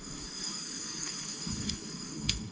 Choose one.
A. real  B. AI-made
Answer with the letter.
B